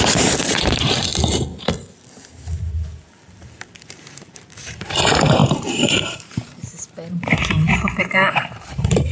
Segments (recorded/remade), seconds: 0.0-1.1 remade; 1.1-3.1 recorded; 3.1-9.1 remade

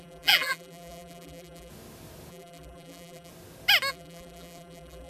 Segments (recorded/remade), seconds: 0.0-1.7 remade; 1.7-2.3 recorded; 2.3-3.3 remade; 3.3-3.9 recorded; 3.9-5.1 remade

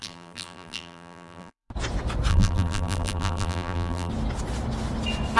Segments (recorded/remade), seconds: 0.0-1.7 remade; 1.7-2.3 recorded; 2.3-4.1 remade; 4.1-5.4 recorded

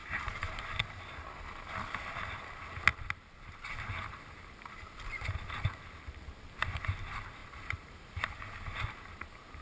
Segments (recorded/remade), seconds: 0.0-0.6 remade; 0.6-7.4 recorded; 7.4-8.9 remade; 8.9-9.6 recorded